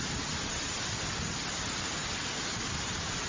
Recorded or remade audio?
remade